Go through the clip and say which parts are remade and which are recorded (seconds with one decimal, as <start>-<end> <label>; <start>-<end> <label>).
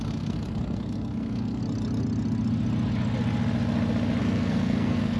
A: 0.0-1.6 remade; 1.6-4.2 recorded; 4.2-5.2 remade